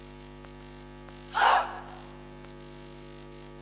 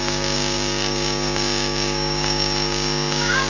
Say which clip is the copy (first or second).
second